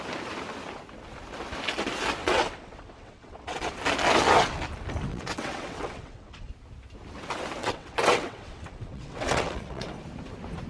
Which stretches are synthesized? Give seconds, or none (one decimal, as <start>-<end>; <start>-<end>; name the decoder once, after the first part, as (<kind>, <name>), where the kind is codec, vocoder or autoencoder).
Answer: 2.2-3.8 (vocoder, WaveNeXt); 5.1-6.5; 7.6-9.9